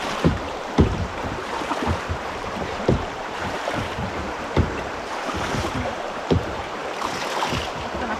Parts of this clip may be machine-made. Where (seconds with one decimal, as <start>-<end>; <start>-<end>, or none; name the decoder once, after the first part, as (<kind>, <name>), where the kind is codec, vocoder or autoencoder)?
0.0-6.8 (vocoder, BigVGAN v2)